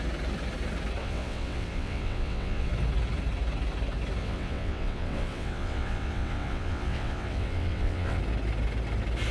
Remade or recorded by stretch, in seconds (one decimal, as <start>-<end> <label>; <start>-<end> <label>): 0.0-1.0 recorded; 1.0-2.7 remade; 2.7-4.2 recorded; 4.2-8.2 remade; 8.2-9.3 recorded